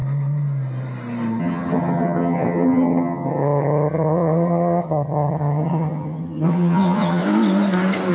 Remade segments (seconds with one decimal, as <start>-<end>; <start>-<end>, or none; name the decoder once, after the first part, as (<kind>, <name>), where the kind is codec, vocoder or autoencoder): 1.4-7.2 (vocoder, HiFi-GAN)